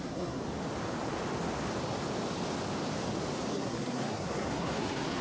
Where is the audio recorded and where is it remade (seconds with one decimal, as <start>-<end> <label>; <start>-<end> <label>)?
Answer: 0.0-0.4 remade; 0.4-3.5 recorded; 3.5-5.2 remade